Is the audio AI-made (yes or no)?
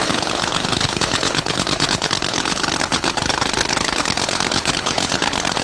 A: yes